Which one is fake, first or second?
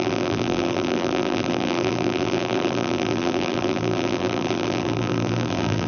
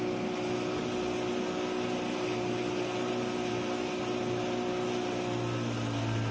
first